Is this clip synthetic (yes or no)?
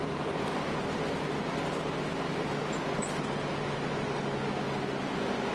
no